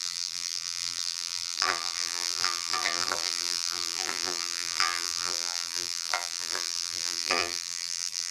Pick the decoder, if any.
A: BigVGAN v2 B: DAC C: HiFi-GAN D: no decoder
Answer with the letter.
A